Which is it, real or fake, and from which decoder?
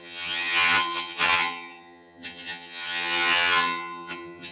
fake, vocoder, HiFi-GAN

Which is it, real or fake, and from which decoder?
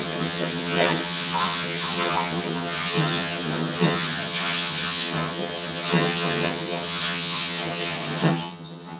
fake, vocoder, HiFi-GAN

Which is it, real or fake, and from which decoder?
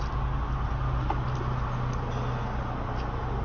real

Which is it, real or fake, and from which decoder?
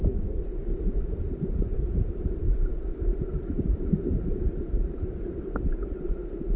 real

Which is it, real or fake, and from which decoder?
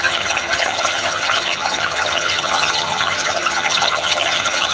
fake, vocoder, HiFi-GAN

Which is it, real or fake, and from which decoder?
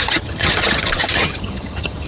fake, vocoder, HiFi-GAN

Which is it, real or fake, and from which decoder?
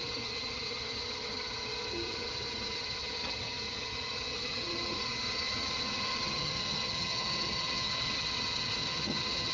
fake, vocoder, HiFi-GAN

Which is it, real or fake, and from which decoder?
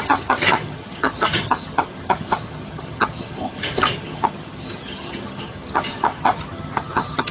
fake, vocoder, HiFi-GAN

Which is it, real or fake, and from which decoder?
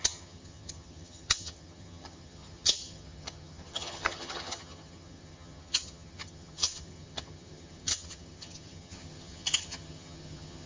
fake, vocoder, HiFi-GAN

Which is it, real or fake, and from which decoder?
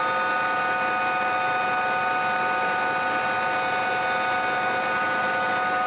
real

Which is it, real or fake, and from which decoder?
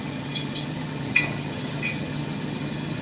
fake, vocoder, HiFi-GAN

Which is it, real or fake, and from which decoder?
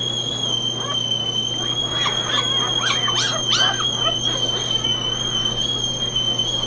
real